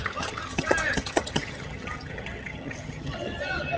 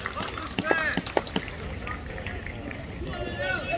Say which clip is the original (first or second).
second